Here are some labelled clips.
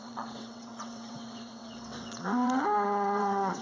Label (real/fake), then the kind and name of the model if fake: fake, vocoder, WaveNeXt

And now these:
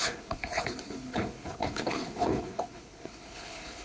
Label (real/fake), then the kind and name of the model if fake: fake, codec, HILCodec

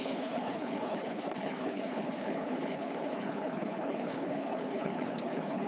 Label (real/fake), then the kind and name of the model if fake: fake, codec, HILCodec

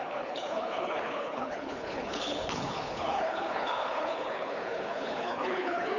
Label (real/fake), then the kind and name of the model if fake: fake, codec, HILCodec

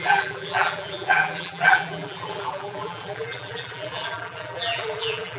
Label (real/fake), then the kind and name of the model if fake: fake, vocoder, BigVGAN v2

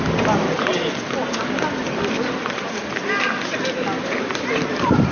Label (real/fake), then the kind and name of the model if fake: real